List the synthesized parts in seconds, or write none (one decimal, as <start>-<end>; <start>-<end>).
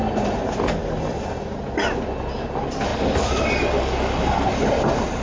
none